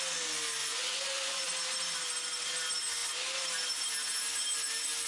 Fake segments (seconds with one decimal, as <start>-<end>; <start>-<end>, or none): 0.6-1.5